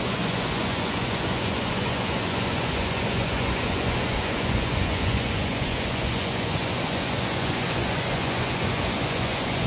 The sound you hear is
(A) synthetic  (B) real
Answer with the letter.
A